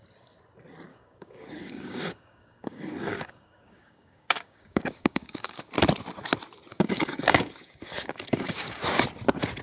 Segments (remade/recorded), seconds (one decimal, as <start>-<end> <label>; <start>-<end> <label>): 0.0-0.9 recorded; 0.9-5.6 remade; 5.6-6.7 recorded; 6.7-8.8 remade; 8.8-9.6 recorded